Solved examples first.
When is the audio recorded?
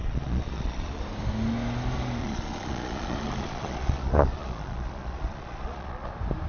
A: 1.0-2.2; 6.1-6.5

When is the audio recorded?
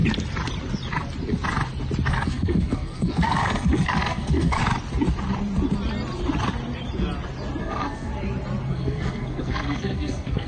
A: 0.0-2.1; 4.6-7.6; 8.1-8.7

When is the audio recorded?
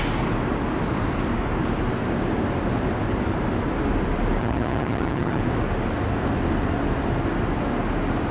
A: 0.0-4.4; 5.4-8.3